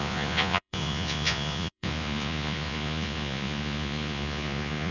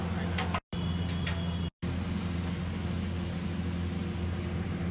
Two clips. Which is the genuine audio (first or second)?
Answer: second